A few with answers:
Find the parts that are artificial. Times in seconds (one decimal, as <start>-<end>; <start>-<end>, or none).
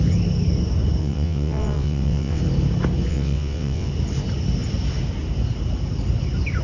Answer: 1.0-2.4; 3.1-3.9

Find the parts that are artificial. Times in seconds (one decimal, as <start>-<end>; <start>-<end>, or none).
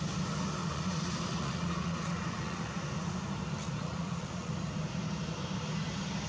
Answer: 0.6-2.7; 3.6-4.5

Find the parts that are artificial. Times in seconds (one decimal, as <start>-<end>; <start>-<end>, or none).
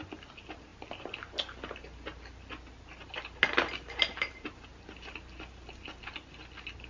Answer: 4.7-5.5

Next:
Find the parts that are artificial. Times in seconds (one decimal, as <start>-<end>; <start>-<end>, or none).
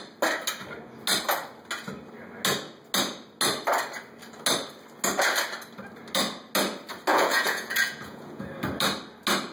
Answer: 7.1-8.5